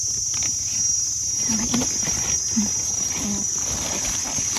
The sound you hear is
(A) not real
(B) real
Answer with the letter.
B